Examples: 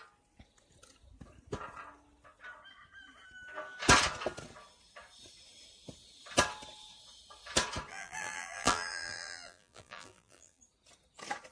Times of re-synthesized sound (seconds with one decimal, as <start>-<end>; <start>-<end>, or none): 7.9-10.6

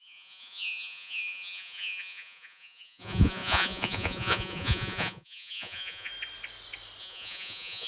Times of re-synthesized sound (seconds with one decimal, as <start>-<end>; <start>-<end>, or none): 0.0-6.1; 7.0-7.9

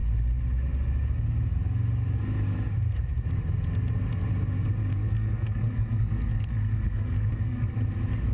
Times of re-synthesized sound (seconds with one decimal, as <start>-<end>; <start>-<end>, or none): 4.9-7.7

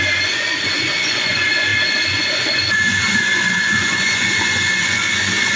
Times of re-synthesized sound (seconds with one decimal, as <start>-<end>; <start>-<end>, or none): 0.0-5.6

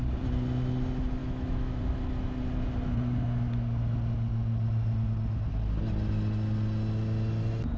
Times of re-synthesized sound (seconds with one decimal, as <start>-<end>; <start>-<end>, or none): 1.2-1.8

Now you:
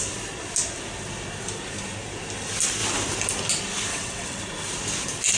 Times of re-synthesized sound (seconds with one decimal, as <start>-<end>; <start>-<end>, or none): 3.9-4.4

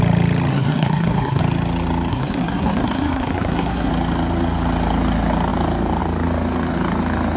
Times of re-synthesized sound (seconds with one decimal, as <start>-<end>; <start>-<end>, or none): 0.5-1.4; 2.1-3.9